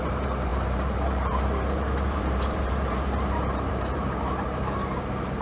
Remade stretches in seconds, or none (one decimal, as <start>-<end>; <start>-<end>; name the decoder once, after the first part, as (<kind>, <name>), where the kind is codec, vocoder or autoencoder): 0.0-5.4 (vocoder, BigVGAN v2)